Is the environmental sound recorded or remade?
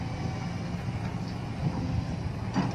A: recorded